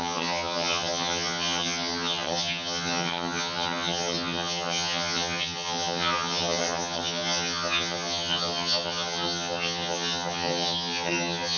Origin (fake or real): fake